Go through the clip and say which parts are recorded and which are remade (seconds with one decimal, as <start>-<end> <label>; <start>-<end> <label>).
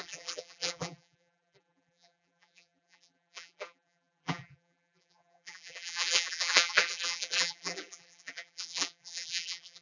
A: 0.0-9.8 remade